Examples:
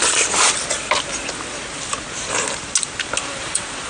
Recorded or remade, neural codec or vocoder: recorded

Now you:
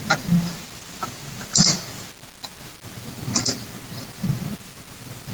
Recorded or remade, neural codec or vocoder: recorded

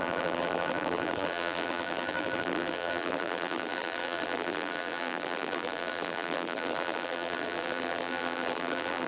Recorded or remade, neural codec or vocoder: remade, vocoder, BigVGAN v2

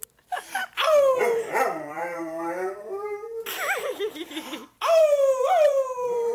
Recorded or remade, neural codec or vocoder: remade, vocoder, BigVGAN v2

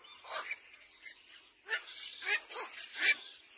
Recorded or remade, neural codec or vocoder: recorded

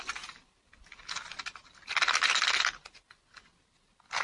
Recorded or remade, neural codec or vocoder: recorded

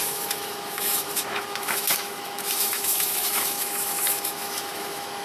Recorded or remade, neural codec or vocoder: remade, autoencoder, DAC-VAE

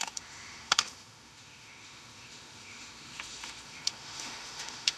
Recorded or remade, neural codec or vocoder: remade, autoencoder, DAC-VAE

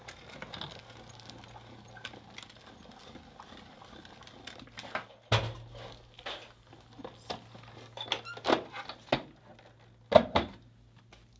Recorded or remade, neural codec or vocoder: recorded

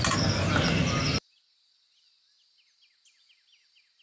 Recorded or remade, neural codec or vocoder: recorded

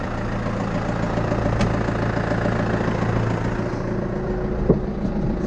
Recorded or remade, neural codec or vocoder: recorded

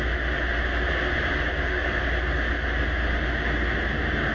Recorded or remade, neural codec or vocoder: recorded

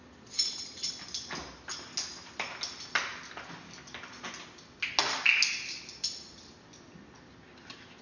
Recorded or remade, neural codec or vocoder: recorded